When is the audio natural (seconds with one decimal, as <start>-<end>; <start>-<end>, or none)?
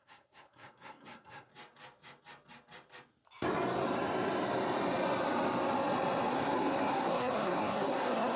1.5-6.3